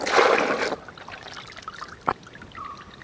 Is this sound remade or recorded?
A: recorded